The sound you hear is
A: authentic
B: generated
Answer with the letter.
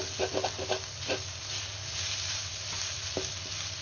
A